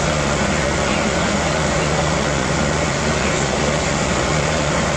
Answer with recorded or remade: remade